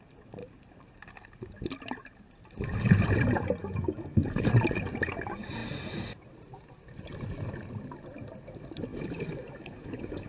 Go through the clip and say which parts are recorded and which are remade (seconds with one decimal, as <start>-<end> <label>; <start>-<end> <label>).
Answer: 0.0-3.6 recorded; 3.6-4.5 remade; 4.5-8.9 recorded; 8.9-10.3 remade